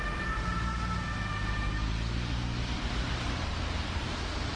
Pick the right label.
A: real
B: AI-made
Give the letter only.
A